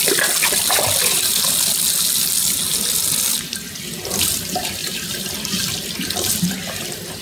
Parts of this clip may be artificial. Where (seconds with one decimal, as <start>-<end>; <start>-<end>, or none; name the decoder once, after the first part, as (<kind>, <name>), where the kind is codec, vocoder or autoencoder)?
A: none